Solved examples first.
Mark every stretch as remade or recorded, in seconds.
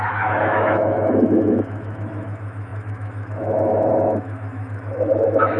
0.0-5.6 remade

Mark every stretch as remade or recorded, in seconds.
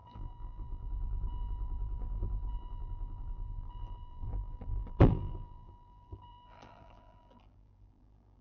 0.0-8.4 remade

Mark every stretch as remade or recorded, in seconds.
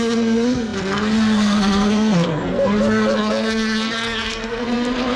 0.0-5.2 remade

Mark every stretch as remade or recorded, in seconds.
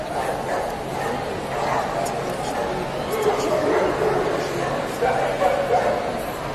0.0-6.5 recorded